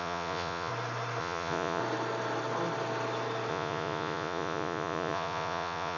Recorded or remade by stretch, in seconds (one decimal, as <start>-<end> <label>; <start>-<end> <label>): 0.0-0.7 remade; 0.7-1.2 recorded; 1.2-1.8 remade; 1.8-3.5 recorded; 3.5-6.0 remade

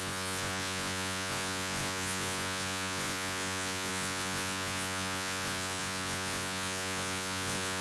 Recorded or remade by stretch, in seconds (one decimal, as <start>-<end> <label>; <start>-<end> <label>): 0.0-7.8 remade

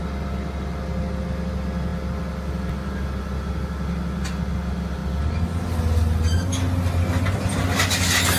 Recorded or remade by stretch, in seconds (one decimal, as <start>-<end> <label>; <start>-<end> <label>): 0.0-8.4 recorded

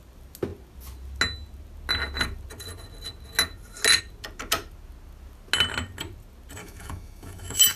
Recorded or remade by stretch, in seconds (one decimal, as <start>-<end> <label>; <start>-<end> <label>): 0.0-6.6 recorded; 6.6-7.8 remade

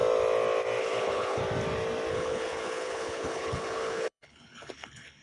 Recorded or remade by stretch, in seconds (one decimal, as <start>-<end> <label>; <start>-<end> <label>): 0.0-0.8 recorded; 0.8-1.4 remade; 1.4-2.1 recorded; 2.1-5.2 remade